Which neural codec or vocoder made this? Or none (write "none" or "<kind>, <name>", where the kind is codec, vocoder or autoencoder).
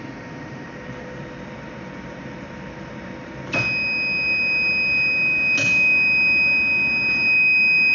none